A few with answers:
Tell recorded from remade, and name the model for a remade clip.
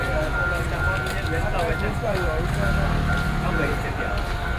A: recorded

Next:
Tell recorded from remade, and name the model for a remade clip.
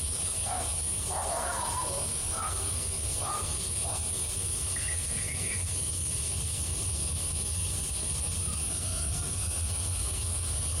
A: remade, codec, SNAC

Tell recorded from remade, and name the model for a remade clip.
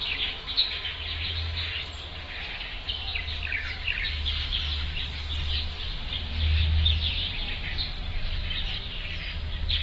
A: recorded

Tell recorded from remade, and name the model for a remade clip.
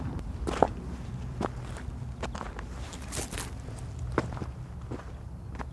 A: recorded